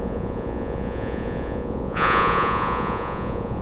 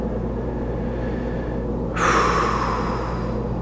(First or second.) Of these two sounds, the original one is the second